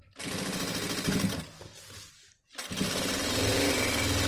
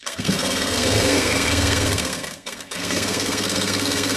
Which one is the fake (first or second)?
second